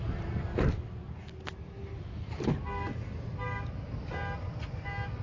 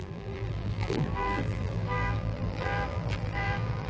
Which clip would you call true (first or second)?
first